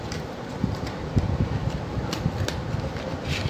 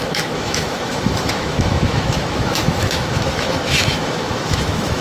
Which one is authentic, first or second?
first